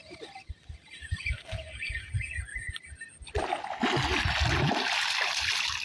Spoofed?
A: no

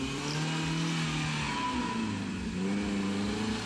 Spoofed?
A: no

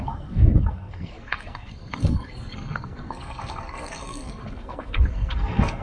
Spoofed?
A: yes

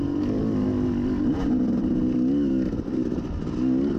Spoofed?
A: no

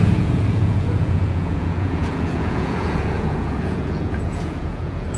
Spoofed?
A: yes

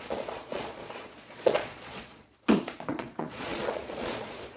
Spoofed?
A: yes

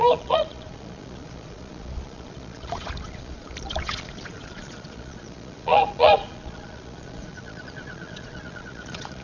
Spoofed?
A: yes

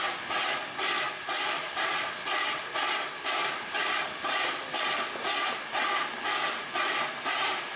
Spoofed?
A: no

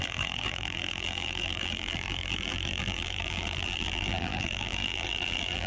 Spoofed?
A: yes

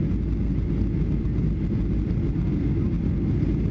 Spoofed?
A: no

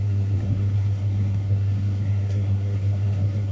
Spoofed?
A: yes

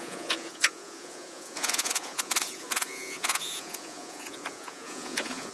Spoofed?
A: yes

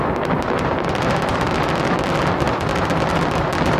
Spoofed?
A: no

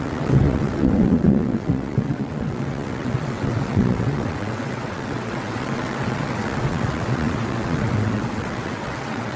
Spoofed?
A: yes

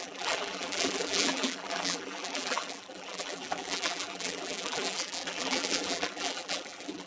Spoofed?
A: yes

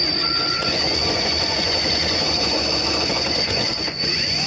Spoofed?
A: yes